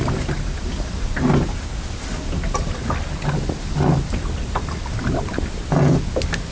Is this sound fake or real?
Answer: real